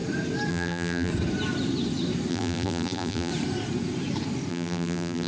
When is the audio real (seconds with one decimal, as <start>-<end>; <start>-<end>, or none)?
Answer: 0.0-0.5; 1.1-2.3; 3.3-4.5

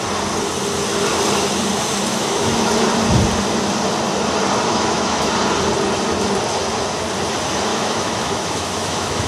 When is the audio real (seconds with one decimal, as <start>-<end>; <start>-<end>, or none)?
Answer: 0.0-2.1; 2.7-4.7; 5.3-7.7

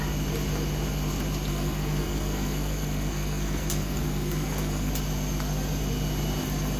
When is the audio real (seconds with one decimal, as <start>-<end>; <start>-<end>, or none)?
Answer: 0.0-1.5; 4.9-6.8